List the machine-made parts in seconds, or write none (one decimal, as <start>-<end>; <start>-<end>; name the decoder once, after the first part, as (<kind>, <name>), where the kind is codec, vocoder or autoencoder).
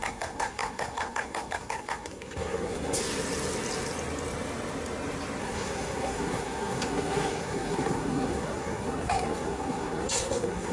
0.0-3.0 (codec, SNAC); 5.4-10.7